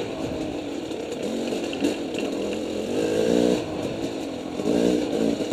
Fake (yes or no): yes